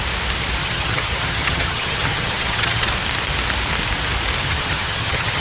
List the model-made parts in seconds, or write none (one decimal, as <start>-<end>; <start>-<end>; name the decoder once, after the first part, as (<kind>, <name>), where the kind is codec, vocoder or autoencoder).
0.6-2.9 (vocoder, HiFi-GAN); 4.4-5.4